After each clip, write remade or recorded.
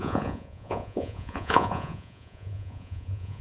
remade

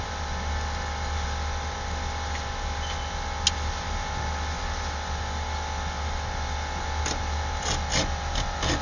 recorded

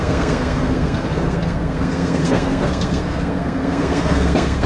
remade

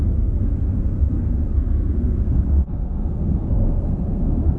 remade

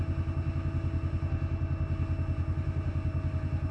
recorded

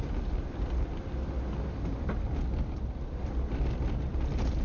recorded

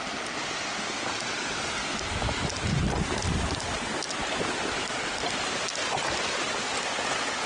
recorded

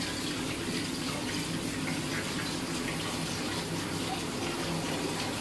recorded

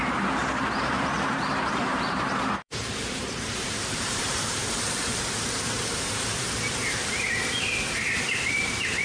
remade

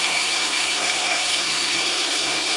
remade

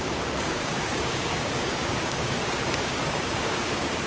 remade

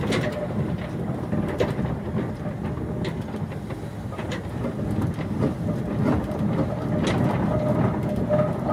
recorded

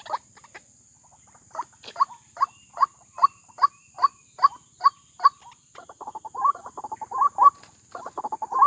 recorded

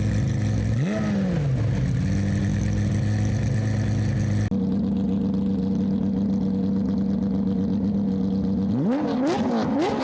recorded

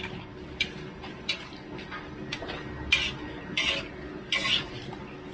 recorded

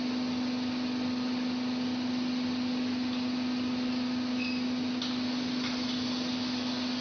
recorded